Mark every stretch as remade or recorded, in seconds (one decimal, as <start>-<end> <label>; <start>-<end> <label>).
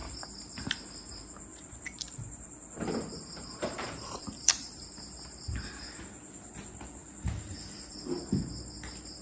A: 0.0-0.8 remade; 0.8-1.5 recorded; 1.5-5.9 remade; 5.9-9.2 recorded